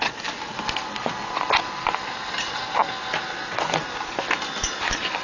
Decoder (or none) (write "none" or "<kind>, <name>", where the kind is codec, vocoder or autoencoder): none